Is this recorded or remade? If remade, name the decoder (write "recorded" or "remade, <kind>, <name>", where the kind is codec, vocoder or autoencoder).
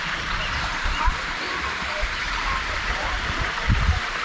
remade, vocoder, BigVGAN v2